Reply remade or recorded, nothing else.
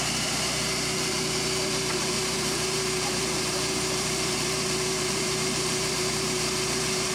remade